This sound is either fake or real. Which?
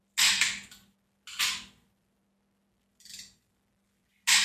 real